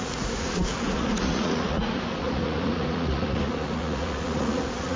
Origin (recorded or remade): remade